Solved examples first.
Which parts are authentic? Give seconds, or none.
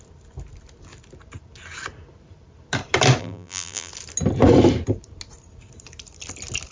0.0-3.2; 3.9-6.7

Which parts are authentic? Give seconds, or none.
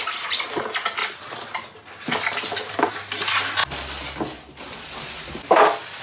0.0-6.0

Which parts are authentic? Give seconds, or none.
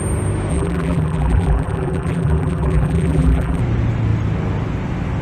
0.0-0.5; 3.6-5.2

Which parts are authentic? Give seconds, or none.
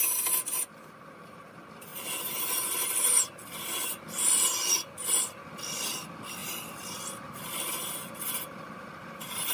0.0-9.5